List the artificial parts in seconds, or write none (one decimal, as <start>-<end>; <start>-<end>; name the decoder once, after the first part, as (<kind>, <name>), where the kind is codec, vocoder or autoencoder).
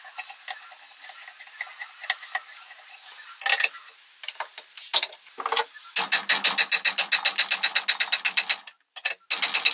none